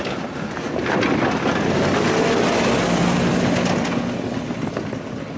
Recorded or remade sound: recorded